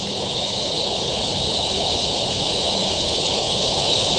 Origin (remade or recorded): remade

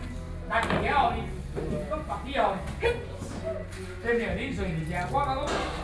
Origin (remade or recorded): recorded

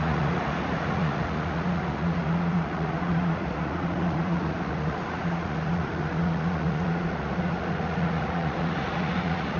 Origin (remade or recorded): remade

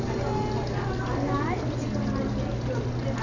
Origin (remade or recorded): recorded